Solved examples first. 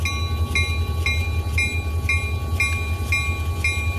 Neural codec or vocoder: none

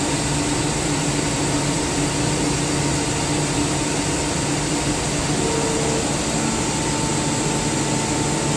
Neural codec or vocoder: none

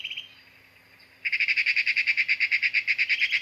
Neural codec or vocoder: none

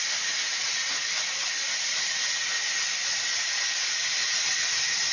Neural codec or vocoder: none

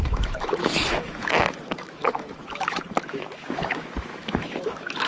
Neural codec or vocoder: autoencoder, DAC-VAE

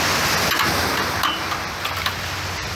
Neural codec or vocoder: none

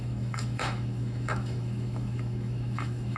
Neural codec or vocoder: autoencoder, DAC-VAE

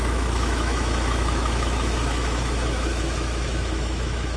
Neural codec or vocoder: autoencoder, DAC-VAE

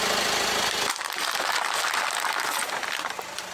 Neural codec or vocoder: none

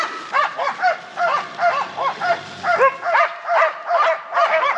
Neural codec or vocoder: none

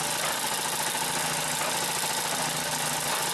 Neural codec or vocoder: none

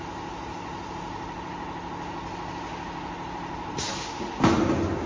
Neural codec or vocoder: none